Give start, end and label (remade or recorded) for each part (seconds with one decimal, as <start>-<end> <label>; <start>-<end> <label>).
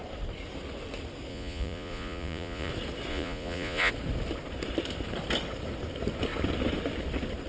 0.0-1.3 recorded; 1.3-2.7 remade; 2.7-3.1 recorded; 3.1-3.9 remade; 3.9-7.5 recorded